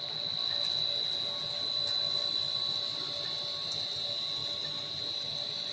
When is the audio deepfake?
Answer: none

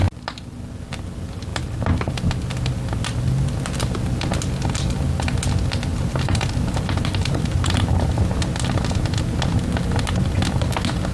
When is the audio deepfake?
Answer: 1.5-2.1; 5.9-8.2

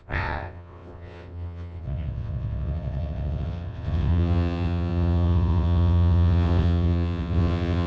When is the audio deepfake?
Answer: 0.0-7.9

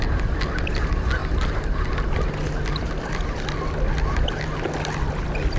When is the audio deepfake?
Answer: none

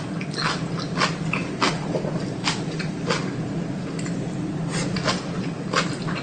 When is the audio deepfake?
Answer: none

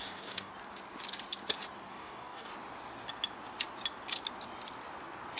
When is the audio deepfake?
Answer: 0.0-0.5; 1.9-2.5

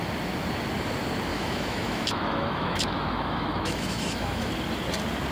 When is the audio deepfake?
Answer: 1.3-4.5